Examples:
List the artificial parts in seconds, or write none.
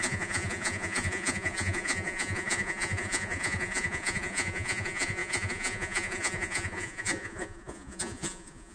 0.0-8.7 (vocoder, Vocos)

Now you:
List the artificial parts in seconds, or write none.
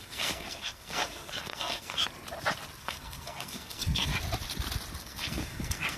0.0-2.0 (codec, SNAC); 2.8-4.1; 5.0-6.0